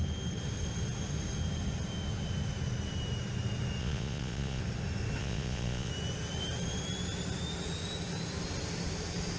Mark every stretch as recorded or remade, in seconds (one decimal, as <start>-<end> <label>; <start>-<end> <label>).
0.0-3.8 recorded; 3.8-4.6 remade; 4.6-5.2 recorded; 5.2-5.9 remade; 5.9-9.4 recorded